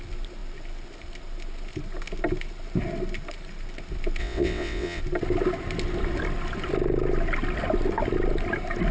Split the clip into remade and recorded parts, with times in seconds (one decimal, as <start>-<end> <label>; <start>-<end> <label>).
0.0-4.2 recorded; 4.2-5.0 remade; 5.0-8.9 recorded